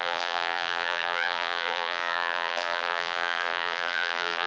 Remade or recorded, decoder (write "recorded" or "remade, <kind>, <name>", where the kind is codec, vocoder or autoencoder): remade, vocoder, BigVGAN v2